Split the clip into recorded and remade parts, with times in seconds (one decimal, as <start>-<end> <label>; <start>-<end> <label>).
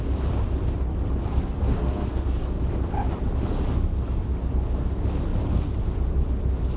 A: 0.0-1.3 recorded; 1.3-2.4 remade; 2.4-6.8 recorded